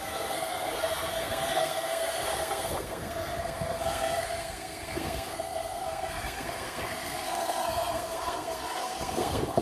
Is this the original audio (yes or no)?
no